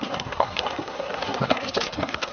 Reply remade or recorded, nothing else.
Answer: remade